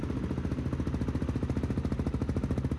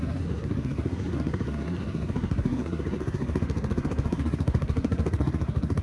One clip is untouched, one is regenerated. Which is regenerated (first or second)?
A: second